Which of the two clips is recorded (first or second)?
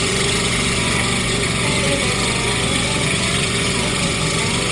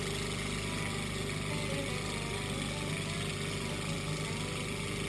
second